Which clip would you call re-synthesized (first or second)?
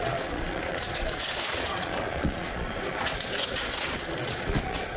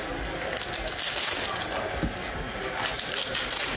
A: first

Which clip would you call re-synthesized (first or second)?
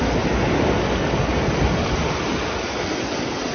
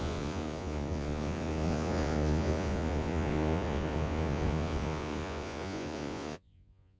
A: second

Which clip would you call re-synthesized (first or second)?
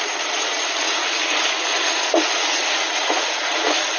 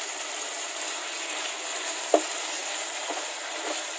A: first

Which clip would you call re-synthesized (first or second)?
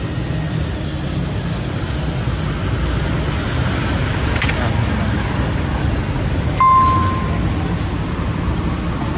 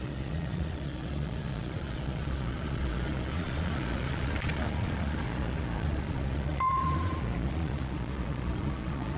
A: second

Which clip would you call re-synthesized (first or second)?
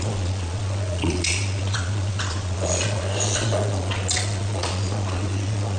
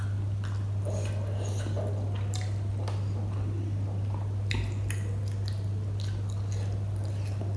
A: first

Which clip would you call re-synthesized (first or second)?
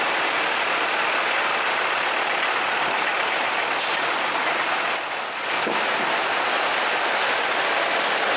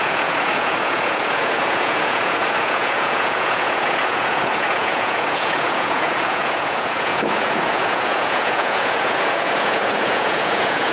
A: second